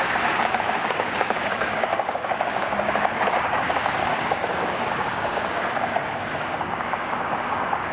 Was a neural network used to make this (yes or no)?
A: yes